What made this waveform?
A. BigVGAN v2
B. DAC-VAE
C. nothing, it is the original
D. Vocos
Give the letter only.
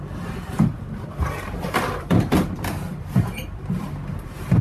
A